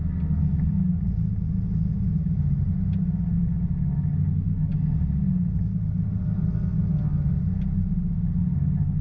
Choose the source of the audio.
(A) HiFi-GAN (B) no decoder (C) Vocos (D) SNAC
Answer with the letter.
B